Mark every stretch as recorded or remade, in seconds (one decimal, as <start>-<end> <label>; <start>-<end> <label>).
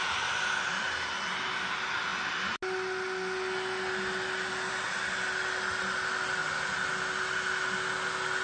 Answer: 0.0-8.4 recorded